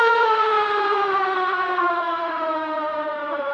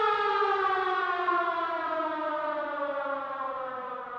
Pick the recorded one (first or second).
second